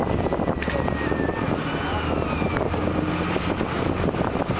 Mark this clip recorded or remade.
recorded